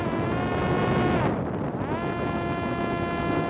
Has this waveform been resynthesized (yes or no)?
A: no